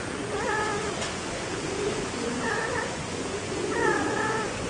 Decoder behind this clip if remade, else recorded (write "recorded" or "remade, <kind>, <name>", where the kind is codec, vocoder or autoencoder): remade, vocoder, Vocos